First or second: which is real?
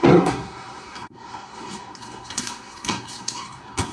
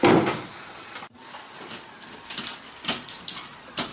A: second